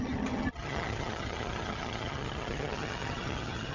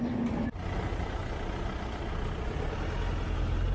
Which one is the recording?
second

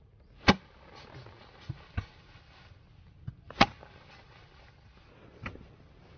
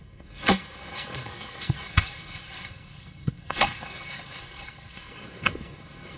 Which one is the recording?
first